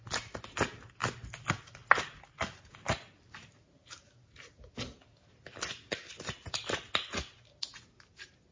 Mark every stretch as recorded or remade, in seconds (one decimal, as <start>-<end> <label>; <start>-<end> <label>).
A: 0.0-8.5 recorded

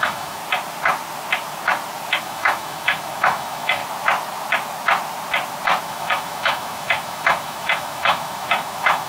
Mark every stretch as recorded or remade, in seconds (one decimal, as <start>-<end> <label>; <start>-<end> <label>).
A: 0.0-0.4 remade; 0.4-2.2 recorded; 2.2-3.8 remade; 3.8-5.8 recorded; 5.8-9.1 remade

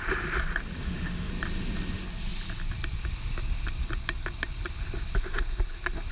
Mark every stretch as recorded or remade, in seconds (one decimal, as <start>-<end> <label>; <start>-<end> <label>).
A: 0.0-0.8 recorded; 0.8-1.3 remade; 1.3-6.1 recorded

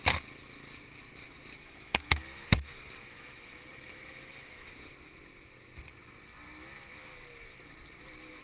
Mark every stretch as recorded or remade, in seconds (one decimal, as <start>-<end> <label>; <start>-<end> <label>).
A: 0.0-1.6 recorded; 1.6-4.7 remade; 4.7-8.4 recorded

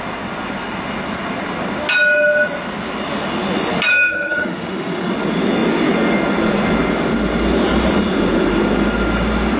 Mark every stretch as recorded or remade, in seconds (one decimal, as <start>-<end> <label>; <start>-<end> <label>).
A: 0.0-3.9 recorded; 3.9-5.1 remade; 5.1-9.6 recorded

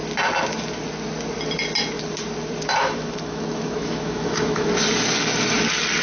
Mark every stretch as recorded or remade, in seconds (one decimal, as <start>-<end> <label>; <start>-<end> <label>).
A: 0.0-2.8 recorded; 2.8-4.7 remade; 4.7-6.0 recorded